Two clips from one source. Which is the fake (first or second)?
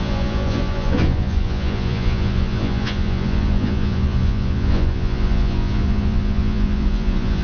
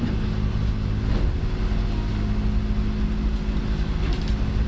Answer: first